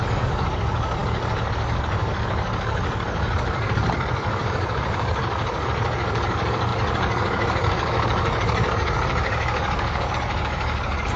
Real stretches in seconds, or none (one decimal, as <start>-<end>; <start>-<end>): none